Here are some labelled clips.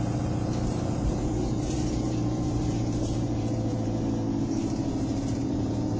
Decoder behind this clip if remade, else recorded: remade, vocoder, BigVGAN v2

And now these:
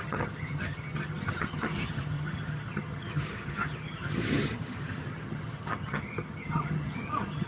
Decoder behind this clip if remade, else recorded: remade, vocoder, HiFi-GAN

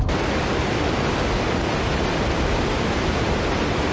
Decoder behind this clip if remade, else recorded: recorded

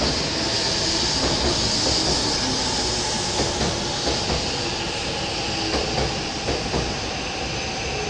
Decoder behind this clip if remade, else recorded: recorded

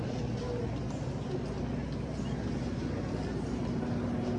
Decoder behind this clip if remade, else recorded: recorded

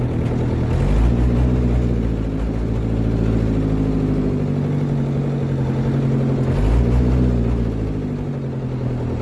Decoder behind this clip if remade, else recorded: recorded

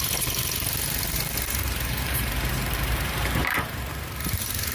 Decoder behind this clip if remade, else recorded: remade, vocoder, BigVGAN v2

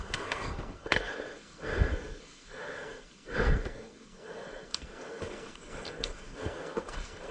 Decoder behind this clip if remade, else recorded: remade, codec, SNAC